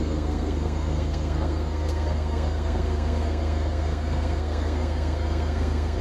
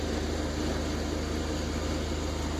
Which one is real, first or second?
second